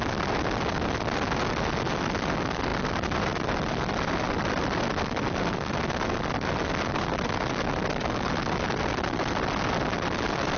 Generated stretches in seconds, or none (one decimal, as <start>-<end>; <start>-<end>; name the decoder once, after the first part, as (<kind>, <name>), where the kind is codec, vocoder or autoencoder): none